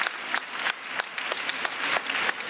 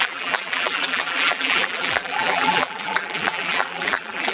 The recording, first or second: first